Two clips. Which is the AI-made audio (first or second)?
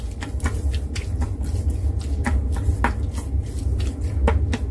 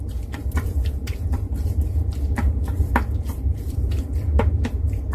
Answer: second